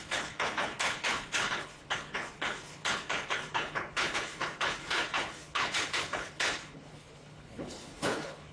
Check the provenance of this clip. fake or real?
fake